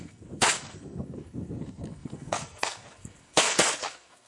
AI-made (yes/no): yes